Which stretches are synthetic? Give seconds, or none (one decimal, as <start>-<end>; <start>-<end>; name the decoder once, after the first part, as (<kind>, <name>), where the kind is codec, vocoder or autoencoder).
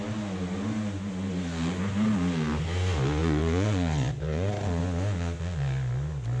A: 3.2-4.8 (vocoder, Vocos)